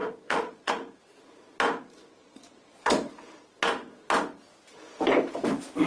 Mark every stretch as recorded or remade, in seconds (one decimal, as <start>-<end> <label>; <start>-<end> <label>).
0.0-0.7 remade; 0.7-2.2 recorded; 2.2-3.1 remade; 3.1-5.9 recorded